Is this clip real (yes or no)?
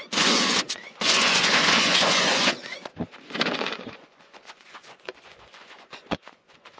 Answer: no